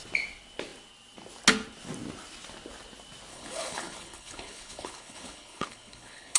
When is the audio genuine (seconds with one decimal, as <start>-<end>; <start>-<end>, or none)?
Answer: 0.0-3.3

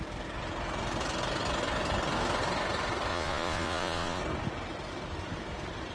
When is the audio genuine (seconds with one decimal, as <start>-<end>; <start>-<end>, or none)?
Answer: 0.0-3.1; 4.2-5.9

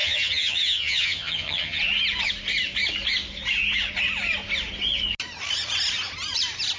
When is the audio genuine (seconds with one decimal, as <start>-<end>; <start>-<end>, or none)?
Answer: 1.8-6.8

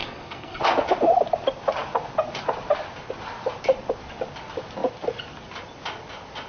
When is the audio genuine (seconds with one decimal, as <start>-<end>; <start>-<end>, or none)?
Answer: 0.6-6.5

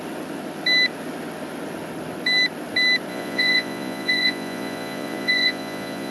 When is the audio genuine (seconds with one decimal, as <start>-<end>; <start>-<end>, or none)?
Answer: 0.0-3.1